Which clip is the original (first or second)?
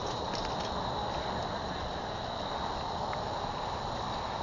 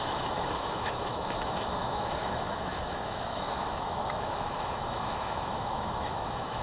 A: first